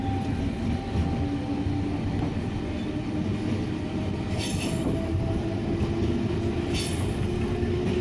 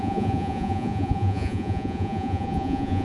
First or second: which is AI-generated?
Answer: second